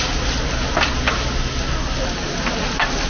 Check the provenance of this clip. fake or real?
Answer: real